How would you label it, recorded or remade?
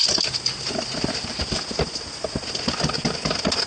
recorded